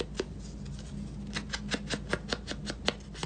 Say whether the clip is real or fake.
real